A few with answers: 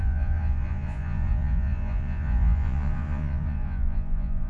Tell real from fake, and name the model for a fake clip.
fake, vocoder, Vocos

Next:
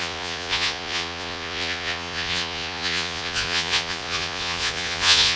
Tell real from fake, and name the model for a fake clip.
fake, vocoder, Vocos